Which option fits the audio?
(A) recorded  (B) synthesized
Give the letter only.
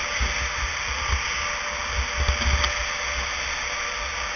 A